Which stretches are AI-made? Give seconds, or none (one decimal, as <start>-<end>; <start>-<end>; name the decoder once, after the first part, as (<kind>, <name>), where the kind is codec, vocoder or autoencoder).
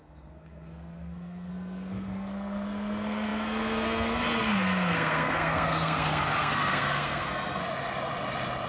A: 0.0-7.6 (codec, SNAC)